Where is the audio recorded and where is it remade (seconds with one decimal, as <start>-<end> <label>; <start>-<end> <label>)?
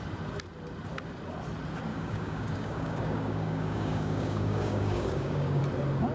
0.0-1.9 recorded; 1.9-5.6 remade; 5.6-6.1 recorded